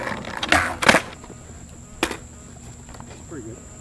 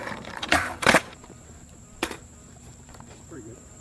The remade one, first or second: second